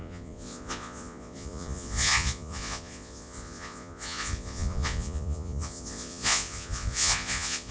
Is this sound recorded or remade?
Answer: remade